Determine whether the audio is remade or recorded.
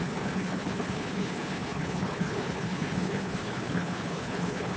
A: remade